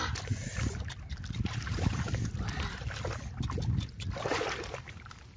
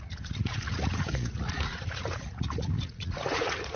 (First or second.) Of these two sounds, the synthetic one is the second